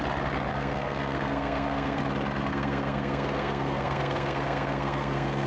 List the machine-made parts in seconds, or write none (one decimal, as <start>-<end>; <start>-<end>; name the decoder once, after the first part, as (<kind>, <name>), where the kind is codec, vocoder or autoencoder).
0.5-2.0 (codec, SNAC); 2.5-5.5